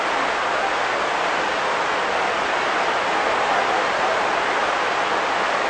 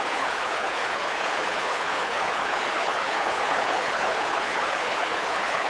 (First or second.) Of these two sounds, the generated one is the second